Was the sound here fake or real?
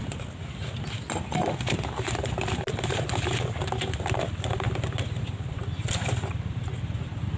real